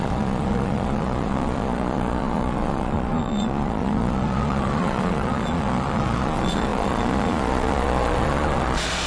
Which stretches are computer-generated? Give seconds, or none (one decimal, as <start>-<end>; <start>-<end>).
0.0-9.1

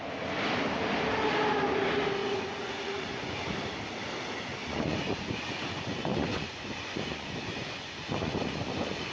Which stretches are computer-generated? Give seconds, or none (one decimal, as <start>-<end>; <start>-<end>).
2.2-3.5; 4.6-9.1

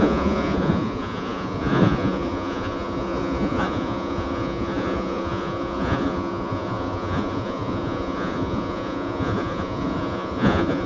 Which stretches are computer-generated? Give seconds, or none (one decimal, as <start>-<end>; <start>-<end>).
0.0-10.9